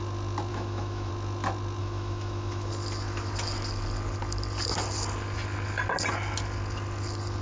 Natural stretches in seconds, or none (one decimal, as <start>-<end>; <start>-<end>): 0.0-0.5; 1.1-1.8; 2.7-7.4